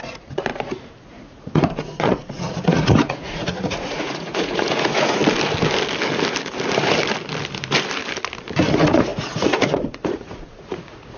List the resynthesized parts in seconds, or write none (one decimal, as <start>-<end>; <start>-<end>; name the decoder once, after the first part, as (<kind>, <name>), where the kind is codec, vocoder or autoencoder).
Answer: 0.0-0.5 (vocoder, Vocos); 1.0-5.2; 8.7-11.2